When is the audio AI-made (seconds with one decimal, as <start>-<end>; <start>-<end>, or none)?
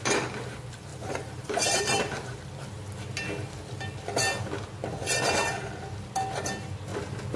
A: 0.9-2.4